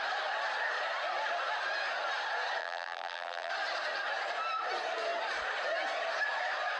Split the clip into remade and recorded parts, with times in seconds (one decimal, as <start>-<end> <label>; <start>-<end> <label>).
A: 0.0-2.6 recorded; 2.6-3.5 remade; 3.5-6.8 recorded

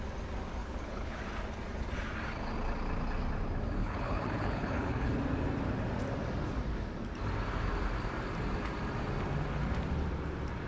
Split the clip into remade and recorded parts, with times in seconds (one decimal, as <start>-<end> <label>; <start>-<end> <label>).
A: 0.0-0.6 recorded; 0.6-1.2 remade; 1.2-3.8 recorded; 3.8-5.2 remade; 5.2-10.7 recorded

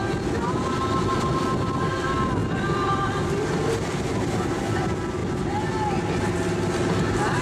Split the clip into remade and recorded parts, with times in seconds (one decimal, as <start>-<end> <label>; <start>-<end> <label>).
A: 0.0-7.4 recorded

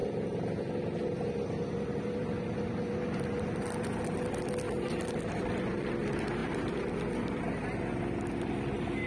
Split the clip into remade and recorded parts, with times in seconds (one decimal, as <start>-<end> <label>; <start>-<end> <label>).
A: 0.0-9.1 recorded

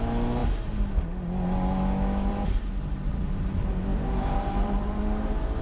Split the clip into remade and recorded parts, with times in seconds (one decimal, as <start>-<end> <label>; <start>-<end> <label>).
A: 0.0-3.9 recorded; 3.9-5.0 remade; 5.0-5.6 recorded

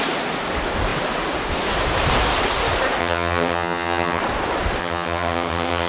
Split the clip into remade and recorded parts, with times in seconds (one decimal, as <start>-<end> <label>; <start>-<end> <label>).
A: 0.0-3.0 recorded; 3.0-4.2 remade; 4.2-4.8 recorded; 4.8-5.9 remade